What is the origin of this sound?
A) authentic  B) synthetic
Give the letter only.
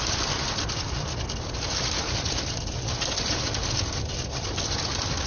A